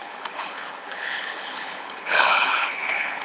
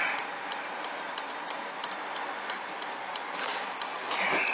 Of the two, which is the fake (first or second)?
first